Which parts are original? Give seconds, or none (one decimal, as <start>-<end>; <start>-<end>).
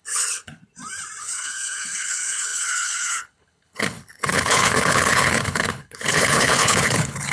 0.6-1.2